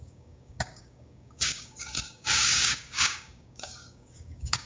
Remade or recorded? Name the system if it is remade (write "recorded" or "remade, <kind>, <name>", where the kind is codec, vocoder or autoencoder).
remade, codec, DAC